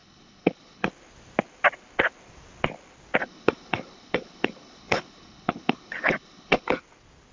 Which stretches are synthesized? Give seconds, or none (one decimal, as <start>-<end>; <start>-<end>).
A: 0.0-0.9; 3.2-6.8